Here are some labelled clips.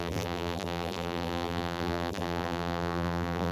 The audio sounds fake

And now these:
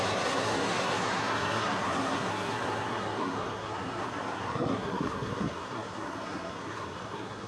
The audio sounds fake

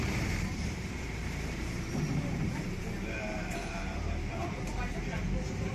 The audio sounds fake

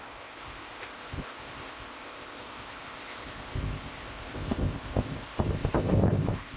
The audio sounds fake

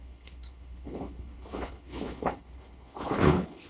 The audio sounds fake